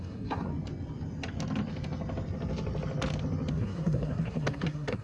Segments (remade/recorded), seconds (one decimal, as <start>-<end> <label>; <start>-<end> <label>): 0.0-0.5 remade; 0.5-3.5 recorded; 3.5-5.0 remade